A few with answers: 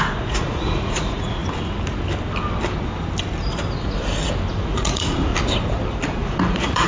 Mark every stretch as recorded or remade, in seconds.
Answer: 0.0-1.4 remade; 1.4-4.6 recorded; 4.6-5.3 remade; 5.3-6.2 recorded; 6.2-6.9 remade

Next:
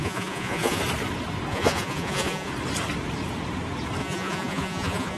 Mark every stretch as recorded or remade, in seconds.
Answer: 0.0-0.8 remade; 0.8-1.5 recorded; 1.5-2.5 remade; 2.5-4.0 recorded; 4.0-5.2 remade